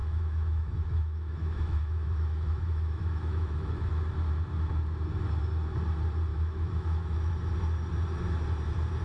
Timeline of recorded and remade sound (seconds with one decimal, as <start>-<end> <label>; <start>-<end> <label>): 0.0-3.9 remade; 3.9-6.3 recorded; 6.3-7.3 remade; 7.3-9.0 recorded